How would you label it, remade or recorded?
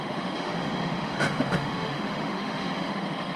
remade